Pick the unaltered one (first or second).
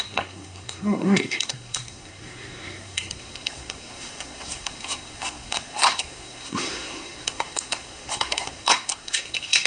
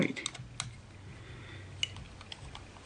second